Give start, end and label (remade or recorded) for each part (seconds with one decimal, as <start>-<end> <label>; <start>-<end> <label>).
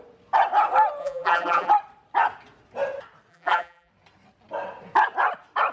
0.0-1.0 recorded; 1.0-1.7 remade; 1.7-3.3 recorded; 3.3-3.9 remade; 3.9-5.7 recorded